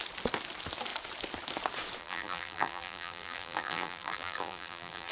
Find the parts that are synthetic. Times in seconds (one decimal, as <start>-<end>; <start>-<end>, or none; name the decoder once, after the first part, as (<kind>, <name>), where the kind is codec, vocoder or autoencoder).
2.0-5.1 (vocoder, BigVGAN v2)